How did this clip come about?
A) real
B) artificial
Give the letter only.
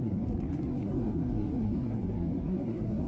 B